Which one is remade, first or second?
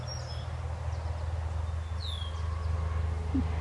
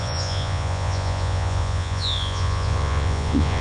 second